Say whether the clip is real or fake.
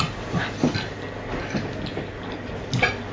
real